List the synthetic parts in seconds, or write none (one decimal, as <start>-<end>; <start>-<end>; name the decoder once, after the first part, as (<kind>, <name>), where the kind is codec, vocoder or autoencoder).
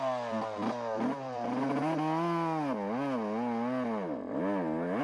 0.0-1.8 (vocoder, BigVGAN v2)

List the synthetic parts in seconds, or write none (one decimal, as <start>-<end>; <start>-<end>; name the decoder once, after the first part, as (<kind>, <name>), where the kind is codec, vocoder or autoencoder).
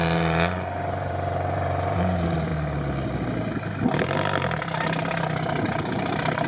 0.0-2.5 (vocoder, BigVGAN v2); 5.6-6.5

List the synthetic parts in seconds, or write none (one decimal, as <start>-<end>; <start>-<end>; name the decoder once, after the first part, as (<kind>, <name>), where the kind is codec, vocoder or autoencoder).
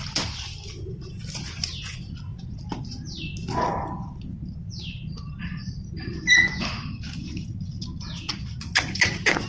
none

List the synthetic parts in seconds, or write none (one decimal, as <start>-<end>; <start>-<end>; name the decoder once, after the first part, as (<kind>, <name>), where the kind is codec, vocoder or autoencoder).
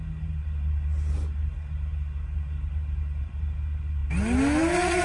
none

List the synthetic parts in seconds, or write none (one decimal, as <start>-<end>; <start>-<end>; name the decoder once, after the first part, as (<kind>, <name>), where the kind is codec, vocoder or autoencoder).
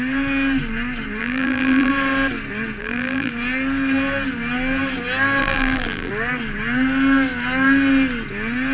1.2-1.9 (vocoder, BigVGAN v2); 2.8-3.3; 5.4-6.1